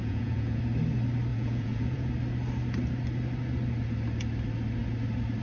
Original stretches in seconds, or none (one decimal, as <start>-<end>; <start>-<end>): 0.6-1.3; 2.1-5.4